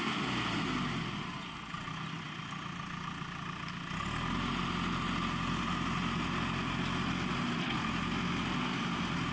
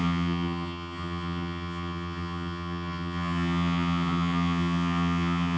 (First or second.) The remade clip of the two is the second